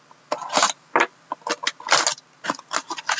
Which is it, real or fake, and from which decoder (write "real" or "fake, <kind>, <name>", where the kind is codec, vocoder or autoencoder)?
real